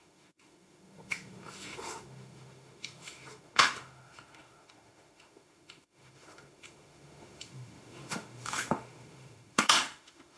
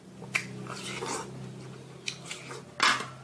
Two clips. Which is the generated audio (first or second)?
first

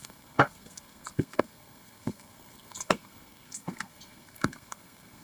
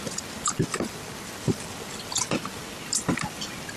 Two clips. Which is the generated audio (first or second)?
first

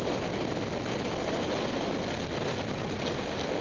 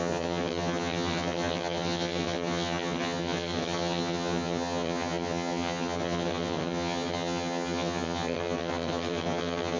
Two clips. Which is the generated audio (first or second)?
second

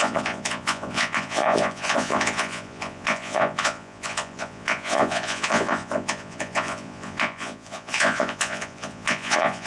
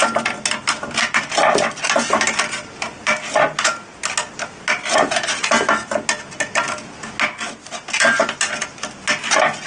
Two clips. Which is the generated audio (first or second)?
first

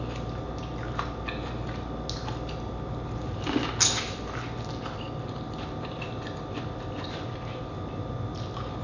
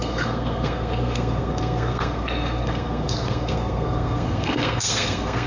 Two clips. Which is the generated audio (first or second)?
second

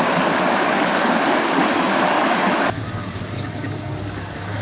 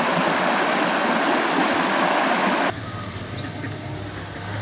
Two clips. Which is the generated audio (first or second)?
first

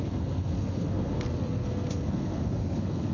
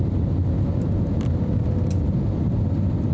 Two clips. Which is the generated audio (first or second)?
first